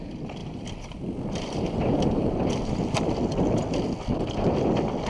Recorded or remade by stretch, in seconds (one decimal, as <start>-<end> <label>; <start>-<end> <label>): 0.0-0.4 recorded; 0.4-3.1 remade; 3.1-5.1 recorded